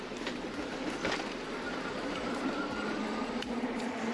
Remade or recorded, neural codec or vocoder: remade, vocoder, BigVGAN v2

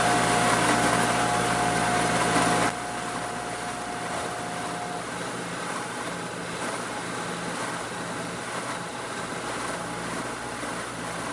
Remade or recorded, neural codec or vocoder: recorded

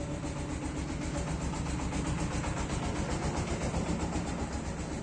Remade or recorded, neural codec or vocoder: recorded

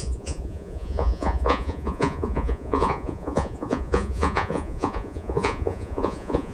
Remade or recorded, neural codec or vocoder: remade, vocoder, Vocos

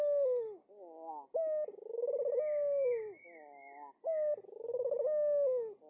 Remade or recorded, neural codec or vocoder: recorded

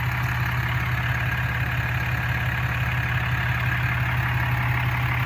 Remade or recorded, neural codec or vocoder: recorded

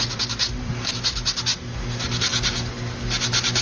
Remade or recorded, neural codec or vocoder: recorded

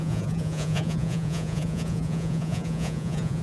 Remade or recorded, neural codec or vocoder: remade, vocoder, Vocos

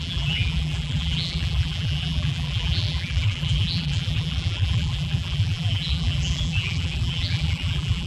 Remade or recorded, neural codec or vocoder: remade, vocoder, BigVGAN v2